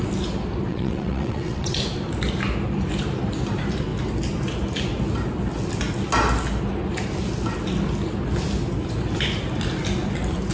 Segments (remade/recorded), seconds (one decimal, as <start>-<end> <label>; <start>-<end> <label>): 0.0-0.7 recorded; 0.7-1.8 remade; 1.8-10.5 recorded